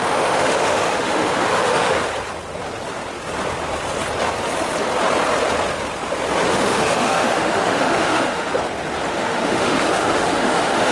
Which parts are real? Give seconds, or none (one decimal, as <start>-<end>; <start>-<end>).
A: 2.0-6.5; 8.5-9.1